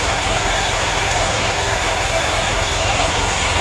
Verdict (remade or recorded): remade